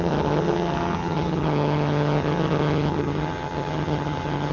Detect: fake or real fake